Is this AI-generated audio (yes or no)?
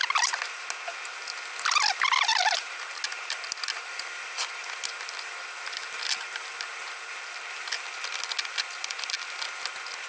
no